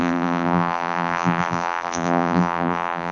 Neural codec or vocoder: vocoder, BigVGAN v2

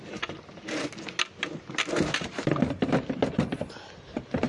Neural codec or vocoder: none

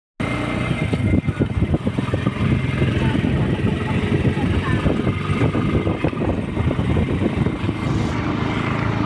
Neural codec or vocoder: none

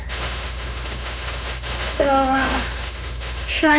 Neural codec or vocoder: autoencoder, DAC-VAE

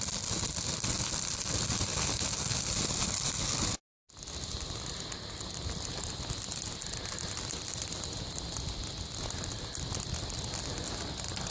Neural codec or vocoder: none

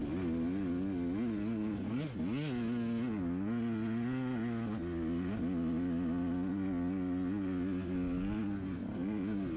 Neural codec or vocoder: none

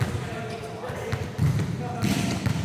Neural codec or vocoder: none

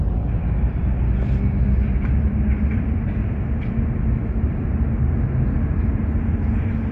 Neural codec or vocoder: vocoder, BigVGAN v2